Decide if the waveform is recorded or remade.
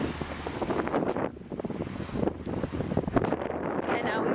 recorded